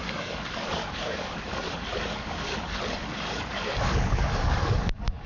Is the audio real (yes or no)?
no